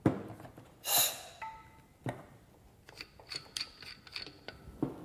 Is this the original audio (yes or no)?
yes